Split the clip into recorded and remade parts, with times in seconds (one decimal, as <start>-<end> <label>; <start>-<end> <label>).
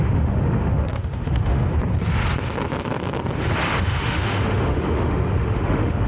0.0-1.6 remade; 1.6-3.8 recorded; 3.8-6.1 remade